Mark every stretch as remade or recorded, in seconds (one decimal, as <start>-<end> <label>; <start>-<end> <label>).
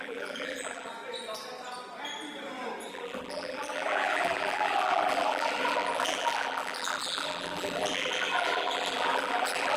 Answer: 0.0-0.9 remade; 0.9-2.9 recorded; 2.9-9.8 remade